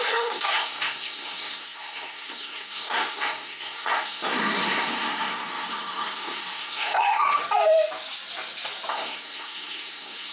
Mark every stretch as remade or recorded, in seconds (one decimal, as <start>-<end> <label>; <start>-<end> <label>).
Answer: 0.0-7.4 remade; 7.4-8.9 recorded; 8.9-10.3 remade